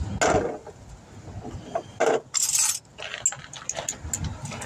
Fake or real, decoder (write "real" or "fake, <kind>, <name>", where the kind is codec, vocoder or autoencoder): real